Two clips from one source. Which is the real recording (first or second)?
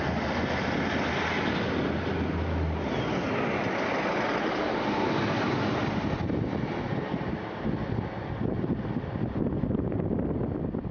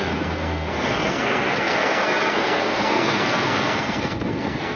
first